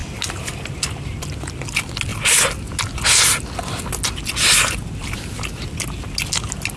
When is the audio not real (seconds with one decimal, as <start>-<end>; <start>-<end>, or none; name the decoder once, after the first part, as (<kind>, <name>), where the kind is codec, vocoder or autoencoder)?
none